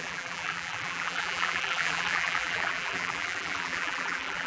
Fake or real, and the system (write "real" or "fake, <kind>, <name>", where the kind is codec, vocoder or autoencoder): fake, vocoder, BigVGAN v2